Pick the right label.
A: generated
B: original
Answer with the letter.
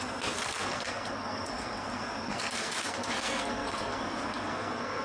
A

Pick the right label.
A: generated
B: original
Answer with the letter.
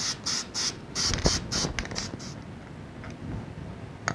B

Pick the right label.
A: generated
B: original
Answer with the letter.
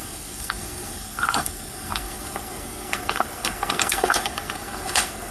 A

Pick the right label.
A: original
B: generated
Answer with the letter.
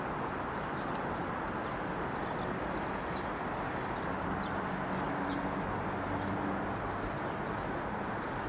A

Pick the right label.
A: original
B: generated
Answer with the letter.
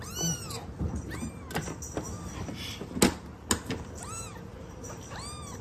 A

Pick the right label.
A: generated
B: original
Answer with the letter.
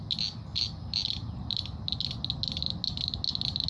B